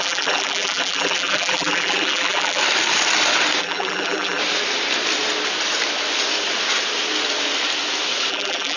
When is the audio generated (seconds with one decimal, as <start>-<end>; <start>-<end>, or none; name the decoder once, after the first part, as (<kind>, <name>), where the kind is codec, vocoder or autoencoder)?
0.0-2.6 (vocoder, BigVGAN v2); 3.6-4.4; 8.3-8.8